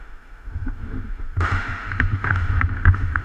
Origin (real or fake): fake